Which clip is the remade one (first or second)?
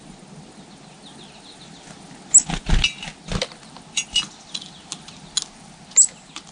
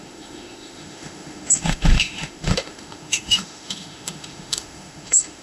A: second